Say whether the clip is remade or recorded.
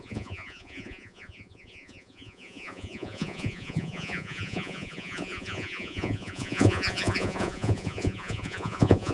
remade